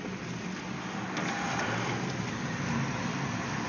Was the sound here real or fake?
real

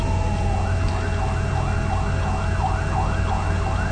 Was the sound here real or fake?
real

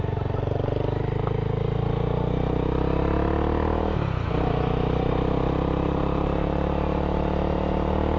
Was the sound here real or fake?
real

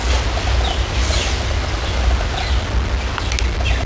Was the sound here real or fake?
real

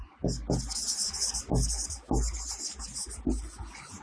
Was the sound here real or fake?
real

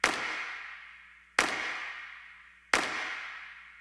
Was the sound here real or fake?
real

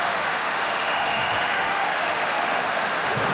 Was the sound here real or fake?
fake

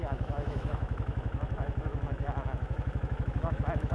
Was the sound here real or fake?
fake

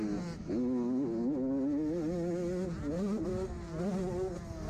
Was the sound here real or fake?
real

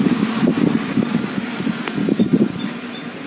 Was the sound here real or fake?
real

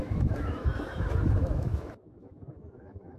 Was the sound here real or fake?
fake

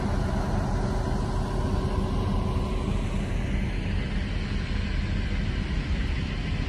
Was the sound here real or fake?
real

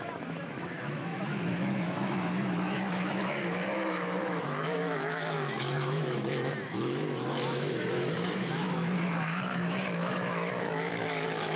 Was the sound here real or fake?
fake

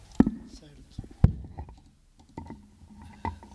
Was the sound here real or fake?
real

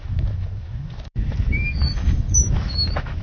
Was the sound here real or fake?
fake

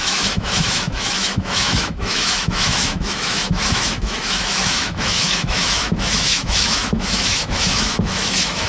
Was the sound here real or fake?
fake